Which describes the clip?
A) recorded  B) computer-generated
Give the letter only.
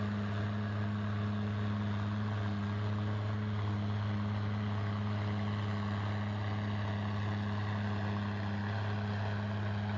A